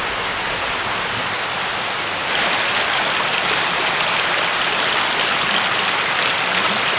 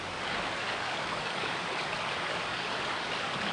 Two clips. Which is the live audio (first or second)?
first